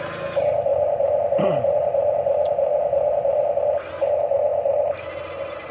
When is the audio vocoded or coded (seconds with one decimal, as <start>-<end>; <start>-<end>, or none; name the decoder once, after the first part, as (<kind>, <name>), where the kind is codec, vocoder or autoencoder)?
2.7-3.6 (vocoder, BigVGAN v2); 4.5-5.7